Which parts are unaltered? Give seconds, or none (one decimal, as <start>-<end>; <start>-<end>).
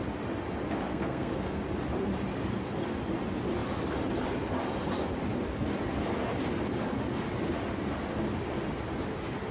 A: 0.0-0.9; 1.6-9.5